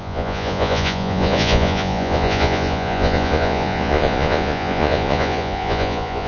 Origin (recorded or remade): remade